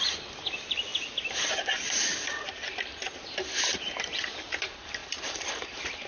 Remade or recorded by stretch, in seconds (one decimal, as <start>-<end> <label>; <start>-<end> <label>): 0.0-0.9 remade; 0.9-4.1 recorded; 4.1-6.1 remade